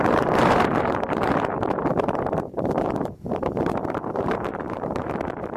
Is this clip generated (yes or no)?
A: yes